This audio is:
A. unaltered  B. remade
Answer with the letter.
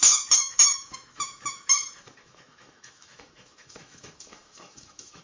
B